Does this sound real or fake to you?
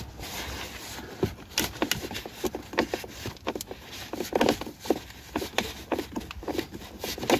real